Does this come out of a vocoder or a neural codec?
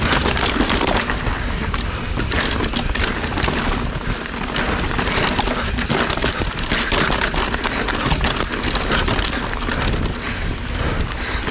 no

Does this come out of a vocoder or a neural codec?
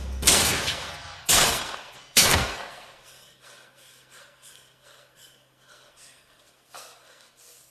yes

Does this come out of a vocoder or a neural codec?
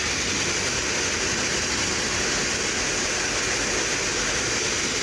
no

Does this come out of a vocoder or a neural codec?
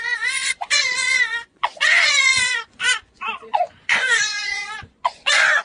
yes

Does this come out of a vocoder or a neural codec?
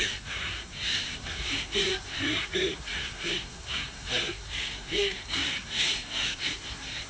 yes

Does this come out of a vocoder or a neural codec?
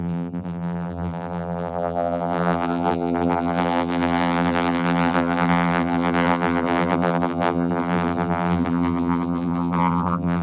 yes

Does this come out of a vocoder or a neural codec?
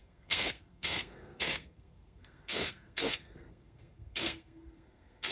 yes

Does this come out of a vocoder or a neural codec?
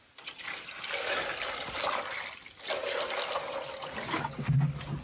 no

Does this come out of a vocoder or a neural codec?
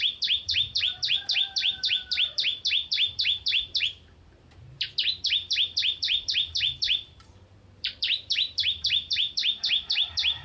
yes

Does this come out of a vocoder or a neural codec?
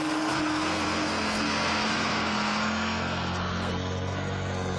yes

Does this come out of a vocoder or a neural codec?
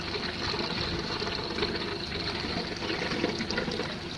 no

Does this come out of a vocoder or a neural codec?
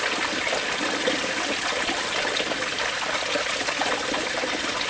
no